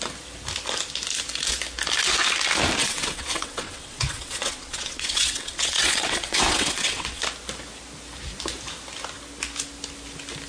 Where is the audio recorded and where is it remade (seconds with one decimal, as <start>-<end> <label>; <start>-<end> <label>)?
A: 0.0-2.8 recorded; 2.8-7.2 remade; 7.2-10.5 recorded